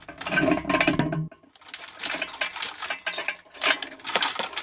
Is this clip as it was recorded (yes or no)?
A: yes